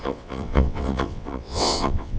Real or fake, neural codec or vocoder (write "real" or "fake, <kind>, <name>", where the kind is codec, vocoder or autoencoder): fake, vocoder, WaveNeXt